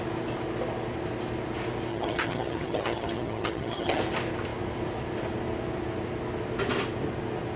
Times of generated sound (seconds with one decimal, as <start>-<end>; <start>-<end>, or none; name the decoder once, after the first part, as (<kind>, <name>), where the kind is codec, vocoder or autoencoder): 1.9-4.0 (vocoder, HiFi-GAN)